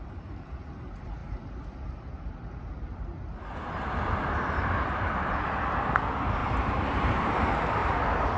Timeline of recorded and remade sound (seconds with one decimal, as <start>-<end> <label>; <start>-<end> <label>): 0.0-6.4 recorded; 6.4-7.3 remade; 7.3-8.4 recorded